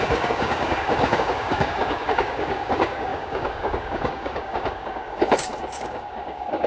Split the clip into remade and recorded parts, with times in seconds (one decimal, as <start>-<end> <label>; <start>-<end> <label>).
0.0-6.7 remade